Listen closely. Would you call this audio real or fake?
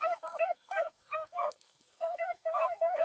fake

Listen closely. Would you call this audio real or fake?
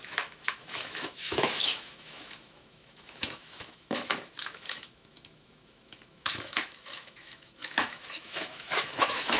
fake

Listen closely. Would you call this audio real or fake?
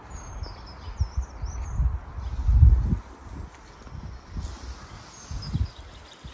real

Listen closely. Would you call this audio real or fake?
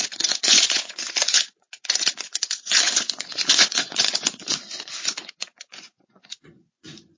fake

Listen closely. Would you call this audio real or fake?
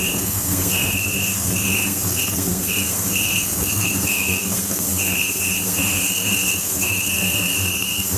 fake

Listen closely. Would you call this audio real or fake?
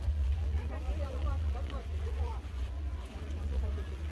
fake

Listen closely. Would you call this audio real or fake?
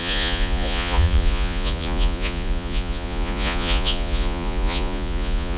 fake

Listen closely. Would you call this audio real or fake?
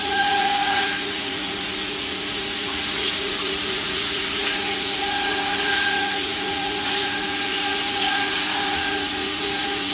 fake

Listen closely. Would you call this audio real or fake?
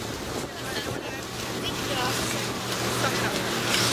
real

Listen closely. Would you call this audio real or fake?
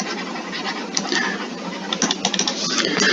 real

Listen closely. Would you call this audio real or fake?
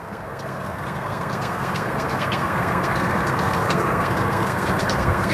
fake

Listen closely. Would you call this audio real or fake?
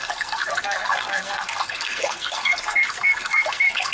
fake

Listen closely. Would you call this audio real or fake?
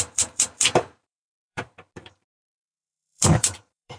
fake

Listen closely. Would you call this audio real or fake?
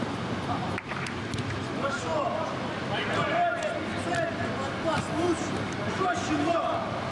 real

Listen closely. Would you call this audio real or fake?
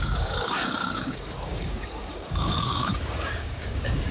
fake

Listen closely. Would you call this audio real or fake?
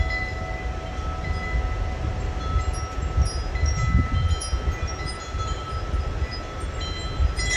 real